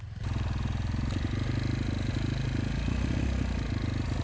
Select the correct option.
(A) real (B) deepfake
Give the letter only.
A